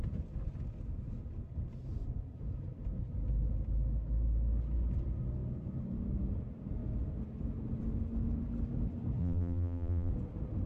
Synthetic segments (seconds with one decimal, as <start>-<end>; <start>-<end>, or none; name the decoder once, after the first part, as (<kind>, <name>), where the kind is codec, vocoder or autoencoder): 9.2-10.1 (vocoder, BigVGAN v2)